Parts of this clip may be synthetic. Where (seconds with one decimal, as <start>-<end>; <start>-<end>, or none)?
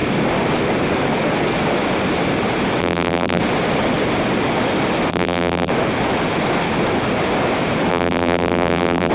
2.8-3.4; 5.1-5.7; 7.9-9.1